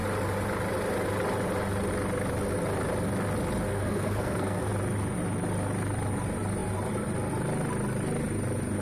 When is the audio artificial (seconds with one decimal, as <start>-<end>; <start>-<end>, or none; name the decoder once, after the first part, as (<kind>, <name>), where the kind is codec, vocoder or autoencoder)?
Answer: 3.7-4.7 (codec, SNAC)